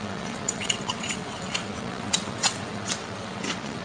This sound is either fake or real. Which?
fake